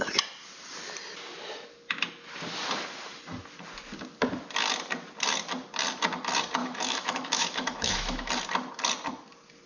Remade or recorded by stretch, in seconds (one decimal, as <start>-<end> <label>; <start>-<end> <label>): 0.0-6.6 recorded; 6.6-8.3 remade; 8.3-9.7 recorded